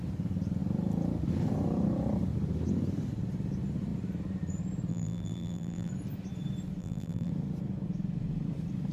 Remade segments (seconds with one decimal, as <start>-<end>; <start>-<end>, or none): 4.9-5.9; 6.8-7.3

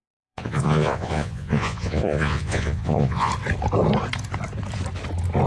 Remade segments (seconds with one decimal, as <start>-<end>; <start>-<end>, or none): 0.0-3.3

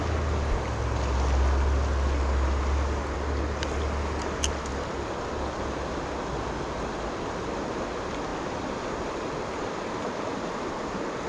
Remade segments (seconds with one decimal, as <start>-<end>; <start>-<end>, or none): 8.3-10.2